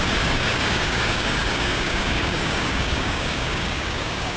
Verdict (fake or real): fake